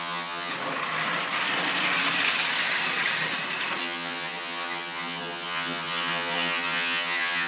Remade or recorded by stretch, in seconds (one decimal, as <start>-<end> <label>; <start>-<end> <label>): 0.0-0.5 remade; 0.5-3.8 recorded; 3.8-7.5 remade